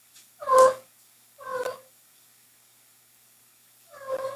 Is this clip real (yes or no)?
no